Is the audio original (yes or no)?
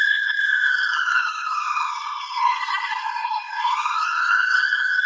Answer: no